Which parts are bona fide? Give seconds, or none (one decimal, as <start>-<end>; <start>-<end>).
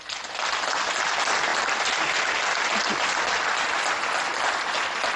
0.0-5.2